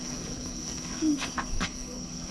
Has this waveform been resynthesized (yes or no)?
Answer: yes